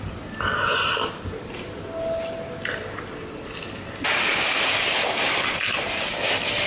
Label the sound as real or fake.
real